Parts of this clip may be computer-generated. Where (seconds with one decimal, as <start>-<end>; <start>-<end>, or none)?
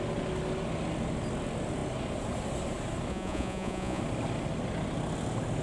3.1-4.0